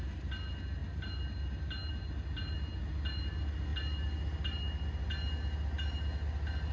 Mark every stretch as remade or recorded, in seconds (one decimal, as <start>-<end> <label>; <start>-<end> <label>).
0.0-6.7 recorded